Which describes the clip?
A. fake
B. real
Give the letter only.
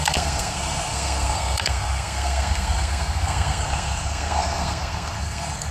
A